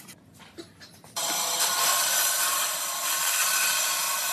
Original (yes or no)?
no